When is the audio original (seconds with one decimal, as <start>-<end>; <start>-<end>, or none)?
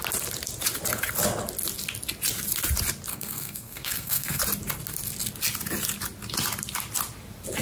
0.0-3.1; 4.4-7.6